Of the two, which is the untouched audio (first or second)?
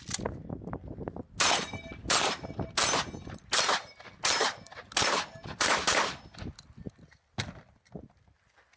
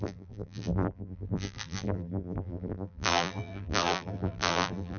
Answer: first